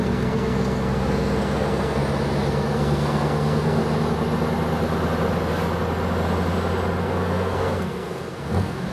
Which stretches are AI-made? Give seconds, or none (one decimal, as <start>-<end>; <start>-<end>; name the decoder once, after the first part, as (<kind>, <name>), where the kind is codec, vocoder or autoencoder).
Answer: 0.0-2.0 (codec, SNAC); 2.5-3.8; 7.0-8.9